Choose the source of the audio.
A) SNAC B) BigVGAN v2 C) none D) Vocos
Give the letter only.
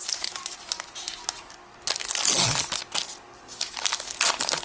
C